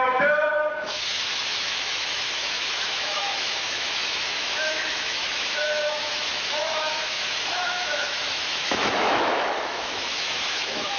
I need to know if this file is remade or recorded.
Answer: remade